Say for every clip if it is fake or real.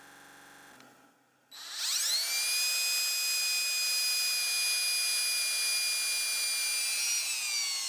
real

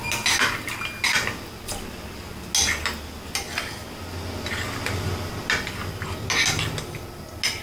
real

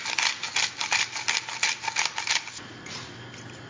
real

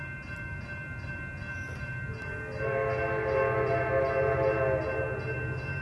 real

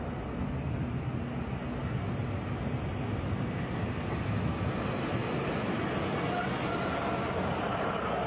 real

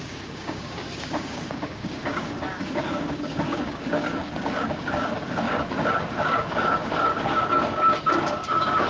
fake